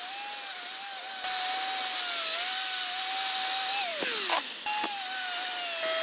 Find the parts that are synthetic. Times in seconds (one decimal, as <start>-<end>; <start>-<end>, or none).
none

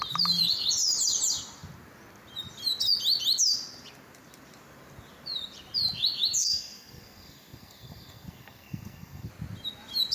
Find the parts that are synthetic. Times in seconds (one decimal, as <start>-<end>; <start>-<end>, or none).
6.4-9.3

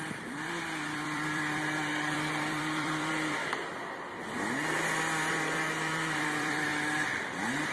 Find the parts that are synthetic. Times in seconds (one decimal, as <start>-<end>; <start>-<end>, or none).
0.0-3.4; 5.3-6.7

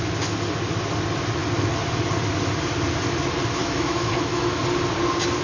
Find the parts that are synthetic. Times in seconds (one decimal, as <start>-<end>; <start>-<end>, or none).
3.6-4.6

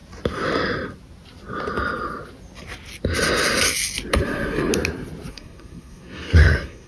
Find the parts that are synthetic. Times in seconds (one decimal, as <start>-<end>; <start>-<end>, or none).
4.1-4.7; 5.3-6.9